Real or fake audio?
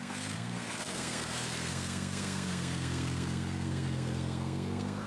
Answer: fake